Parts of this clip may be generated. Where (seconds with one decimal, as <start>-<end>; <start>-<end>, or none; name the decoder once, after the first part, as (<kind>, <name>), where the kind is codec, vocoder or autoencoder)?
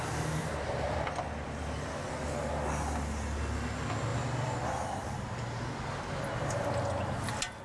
0.4-1.0 (vocoder, BigVGAN v2)